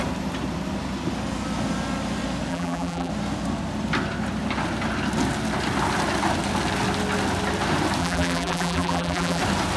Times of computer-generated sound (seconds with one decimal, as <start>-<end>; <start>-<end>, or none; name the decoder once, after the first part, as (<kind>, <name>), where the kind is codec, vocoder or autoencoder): 2.5-3.1 (vocoder, BigVGAN v2); 8.0-9.4